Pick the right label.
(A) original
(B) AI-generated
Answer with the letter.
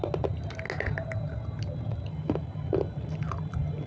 A